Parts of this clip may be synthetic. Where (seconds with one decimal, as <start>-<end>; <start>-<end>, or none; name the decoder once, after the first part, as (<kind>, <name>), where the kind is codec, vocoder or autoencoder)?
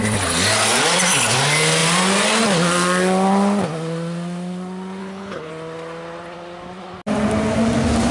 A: 5.0-5.5 (codec, HILCodec)